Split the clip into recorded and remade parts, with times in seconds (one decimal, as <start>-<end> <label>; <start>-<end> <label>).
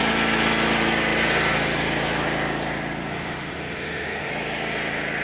0.0-3.1 recorded; 3.1-4.3 remade; 4.3-5.2 recorded